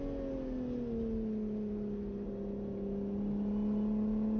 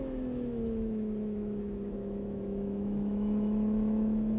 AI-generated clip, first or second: second